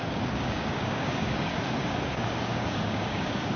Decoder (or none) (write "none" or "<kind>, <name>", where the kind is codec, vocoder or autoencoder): codec, DAC